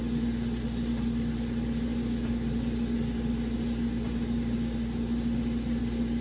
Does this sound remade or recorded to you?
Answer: recorded